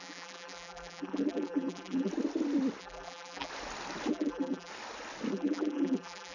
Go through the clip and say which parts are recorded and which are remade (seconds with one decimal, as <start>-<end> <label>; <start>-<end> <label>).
0.0-2.1 remade; 2.1-2.8 recorded; 2.8-3.5 remade; 3.5-4.1 recorded; 4.1-4.7 remade; 4.7-5.3 recorded; 5.3-6.3 remade